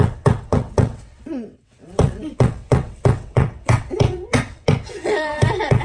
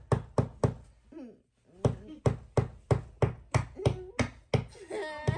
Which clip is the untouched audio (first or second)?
second